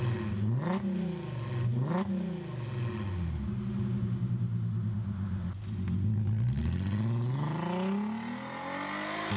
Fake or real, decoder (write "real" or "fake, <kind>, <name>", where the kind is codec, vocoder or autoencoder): real